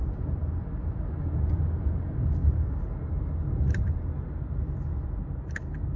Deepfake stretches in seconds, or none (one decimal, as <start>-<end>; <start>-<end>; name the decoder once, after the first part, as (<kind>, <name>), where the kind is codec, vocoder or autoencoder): none